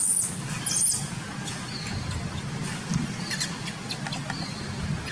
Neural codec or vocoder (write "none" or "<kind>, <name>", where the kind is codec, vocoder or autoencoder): none